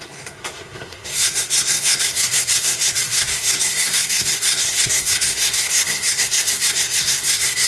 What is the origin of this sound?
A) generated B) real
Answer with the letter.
A